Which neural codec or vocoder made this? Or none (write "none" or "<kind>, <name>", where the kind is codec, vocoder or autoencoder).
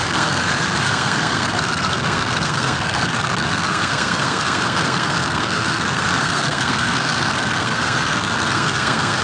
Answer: codec, SNAC